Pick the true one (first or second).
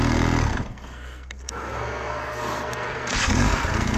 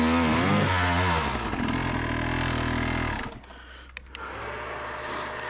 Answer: second